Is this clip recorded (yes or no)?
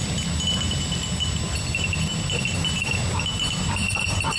yes